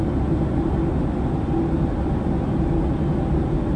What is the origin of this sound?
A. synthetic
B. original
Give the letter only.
B